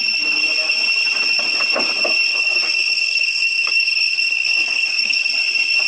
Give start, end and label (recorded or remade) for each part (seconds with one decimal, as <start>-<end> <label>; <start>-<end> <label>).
0.0-2.3 recorded; 2.3-5.3 remade; 5.3-5.9 recorded

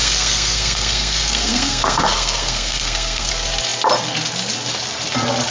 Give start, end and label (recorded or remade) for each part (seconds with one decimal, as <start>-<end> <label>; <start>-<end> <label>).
0.0-3.3 remade; 3.3-5.5 recorded